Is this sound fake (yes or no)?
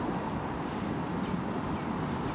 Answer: no